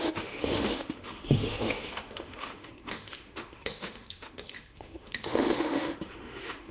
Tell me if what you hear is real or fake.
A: fake